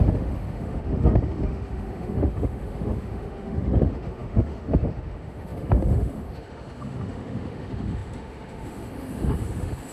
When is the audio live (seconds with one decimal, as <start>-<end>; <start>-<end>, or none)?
none